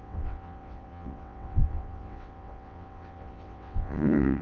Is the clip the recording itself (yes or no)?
no